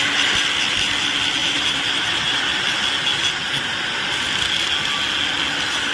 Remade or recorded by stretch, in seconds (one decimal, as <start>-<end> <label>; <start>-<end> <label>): 0.0-1.4 recorded; 1.4-2.4 remade; 2.4-5.9 recorded